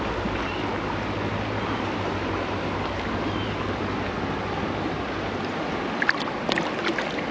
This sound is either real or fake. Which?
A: real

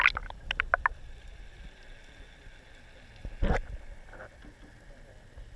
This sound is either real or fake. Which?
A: real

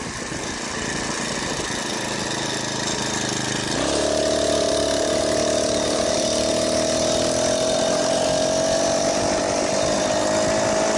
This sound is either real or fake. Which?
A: real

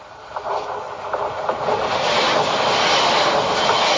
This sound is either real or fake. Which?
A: real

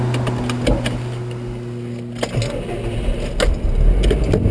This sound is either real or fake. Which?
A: real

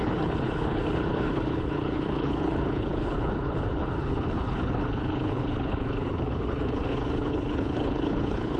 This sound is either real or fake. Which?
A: fake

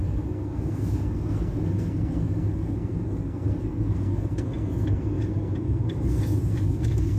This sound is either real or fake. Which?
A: fake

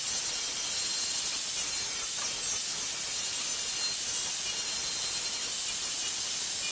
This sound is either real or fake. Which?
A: real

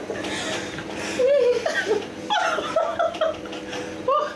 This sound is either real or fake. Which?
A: real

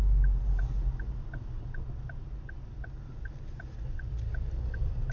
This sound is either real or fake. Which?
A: real